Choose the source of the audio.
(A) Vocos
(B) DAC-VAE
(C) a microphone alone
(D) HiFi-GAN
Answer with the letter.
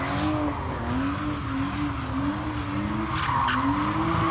C